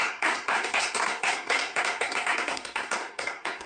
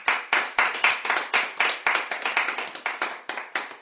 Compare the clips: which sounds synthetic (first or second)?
first